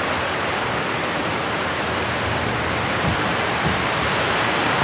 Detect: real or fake real